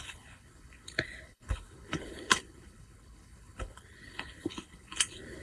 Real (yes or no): no